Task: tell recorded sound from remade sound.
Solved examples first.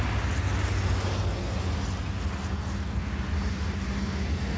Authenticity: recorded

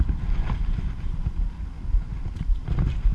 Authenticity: recorded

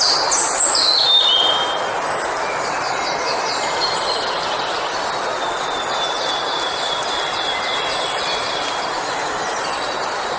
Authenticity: recorded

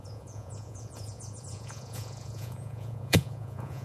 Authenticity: remade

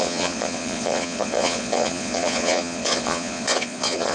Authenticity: remade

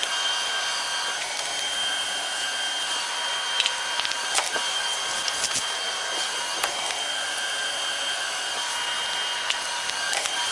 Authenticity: recorded